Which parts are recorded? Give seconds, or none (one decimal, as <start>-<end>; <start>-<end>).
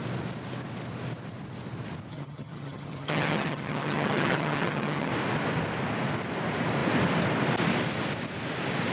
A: 0.0-2.1; 5.1-8.9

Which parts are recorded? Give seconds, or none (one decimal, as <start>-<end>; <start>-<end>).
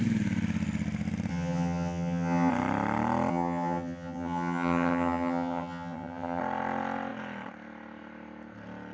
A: 0.0-1.3; 2.5-3.3; 6.4-8.9